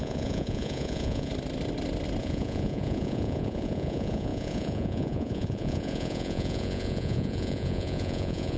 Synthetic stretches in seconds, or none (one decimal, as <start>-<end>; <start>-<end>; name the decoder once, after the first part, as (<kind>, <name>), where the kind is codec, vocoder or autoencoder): 0.0-1.3 (vocoder, Vocos); 2.2-8.6